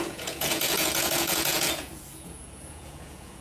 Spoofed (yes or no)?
yes